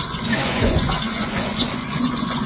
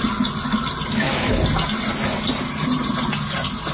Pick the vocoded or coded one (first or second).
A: first